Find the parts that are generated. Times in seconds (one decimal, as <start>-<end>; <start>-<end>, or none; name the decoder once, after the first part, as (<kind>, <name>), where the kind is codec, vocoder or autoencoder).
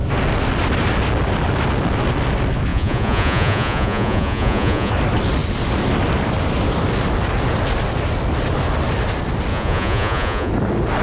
2.7-4.9 (vocoder, Vocos); 9.5-10.5